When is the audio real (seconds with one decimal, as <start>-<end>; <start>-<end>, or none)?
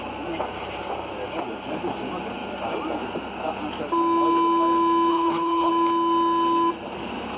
0.0-5.1; 5.7-7.4